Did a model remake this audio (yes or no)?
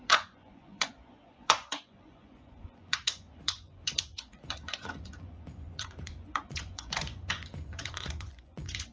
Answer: yes